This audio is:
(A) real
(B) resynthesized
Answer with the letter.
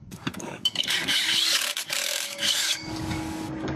B